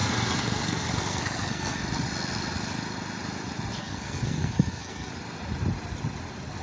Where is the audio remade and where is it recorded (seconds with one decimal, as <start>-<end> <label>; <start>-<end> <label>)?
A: 0.0-1.8 remade; 1.8-3.8 recorded; 3.8-5.1 remade; 5.1-6.6 recorded